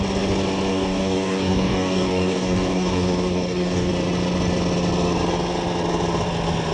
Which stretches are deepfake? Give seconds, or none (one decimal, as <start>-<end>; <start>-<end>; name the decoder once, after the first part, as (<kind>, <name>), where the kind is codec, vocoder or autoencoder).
0.7-3.9 (codec, DAC)